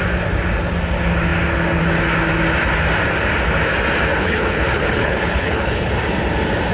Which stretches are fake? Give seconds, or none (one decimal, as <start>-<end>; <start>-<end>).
4.1-5.9